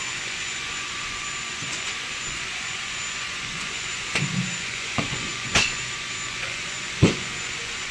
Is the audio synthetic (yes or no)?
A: yes